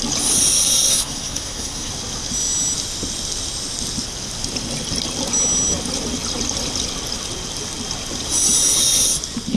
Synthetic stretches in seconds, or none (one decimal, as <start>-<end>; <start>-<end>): 0.9-1.9